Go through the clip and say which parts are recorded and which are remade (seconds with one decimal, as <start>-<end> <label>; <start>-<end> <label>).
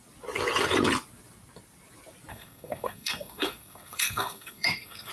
0.0-2.3 recorded; 2.3-5.1 remade